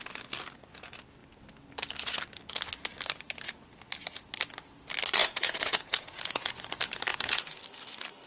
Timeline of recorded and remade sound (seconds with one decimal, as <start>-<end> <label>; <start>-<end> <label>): 0.0-5.2 recorded; 5.2-6.5 remade; 6.5-7.1 recorded; 7.1-7.6 remade; 7.6-8.3 recorded